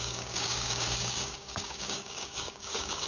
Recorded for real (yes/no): no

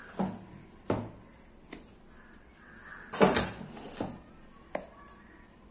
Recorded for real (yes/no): yes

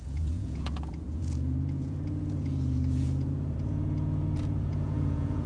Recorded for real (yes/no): no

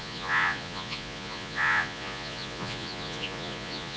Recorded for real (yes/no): no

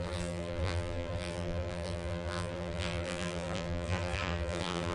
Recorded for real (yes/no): no